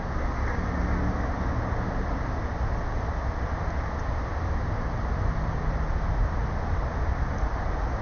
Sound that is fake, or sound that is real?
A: real